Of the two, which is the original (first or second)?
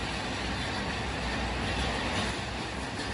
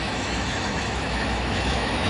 first